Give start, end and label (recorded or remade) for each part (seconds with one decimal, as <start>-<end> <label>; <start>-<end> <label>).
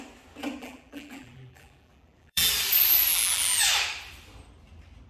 0.0-0.6 recorded; 0.6-2.5 remade; 2.5-3.1 recorded; 3.1-3.6 remade; 3.6-5.1 recorded